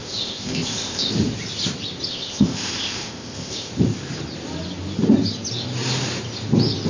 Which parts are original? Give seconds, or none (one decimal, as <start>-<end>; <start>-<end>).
1.1-2.1; 3.7-6.9